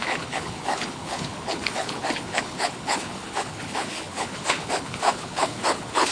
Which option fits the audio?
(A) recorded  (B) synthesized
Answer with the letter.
B